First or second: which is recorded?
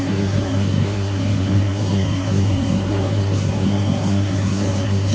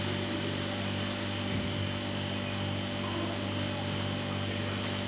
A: second